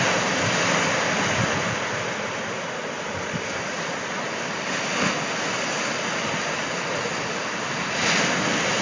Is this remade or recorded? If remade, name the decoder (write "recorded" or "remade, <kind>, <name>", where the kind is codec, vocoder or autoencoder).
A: recorded